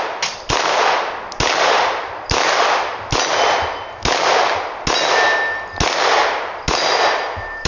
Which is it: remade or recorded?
recorded